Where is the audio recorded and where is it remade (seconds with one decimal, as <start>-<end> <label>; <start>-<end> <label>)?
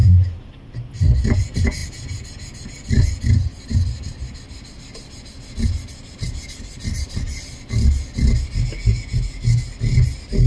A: 0.0-10.5 recorded